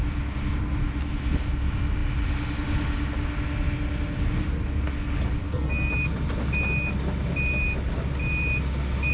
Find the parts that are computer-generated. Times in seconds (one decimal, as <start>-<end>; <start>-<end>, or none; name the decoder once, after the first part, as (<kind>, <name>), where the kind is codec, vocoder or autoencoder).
5.4-5.9 (codec, SNAC)